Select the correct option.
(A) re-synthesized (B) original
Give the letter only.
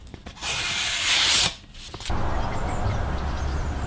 B